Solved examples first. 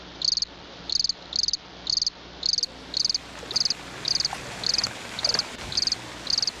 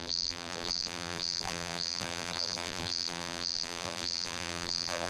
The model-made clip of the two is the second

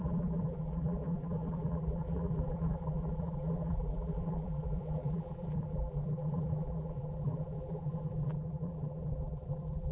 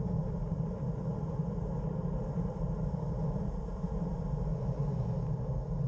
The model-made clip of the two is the first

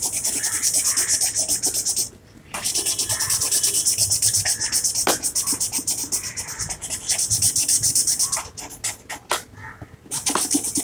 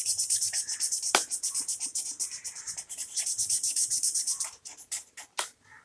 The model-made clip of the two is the second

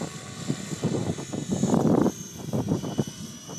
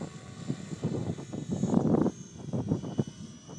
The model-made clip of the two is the first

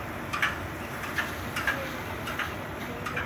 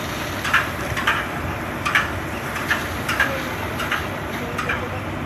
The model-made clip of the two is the second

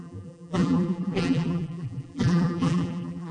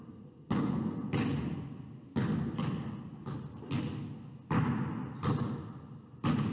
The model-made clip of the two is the first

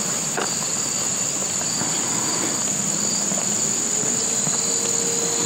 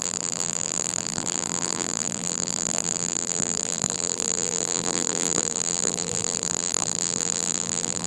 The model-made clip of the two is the second